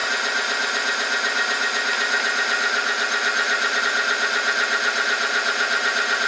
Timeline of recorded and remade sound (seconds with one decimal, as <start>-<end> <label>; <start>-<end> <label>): 0.0-6.3 recorded